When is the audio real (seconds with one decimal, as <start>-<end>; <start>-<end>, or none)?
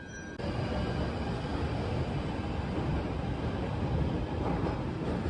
0.0-5.3